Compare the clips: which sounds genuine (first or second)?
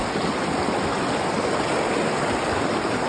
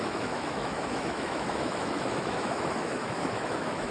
first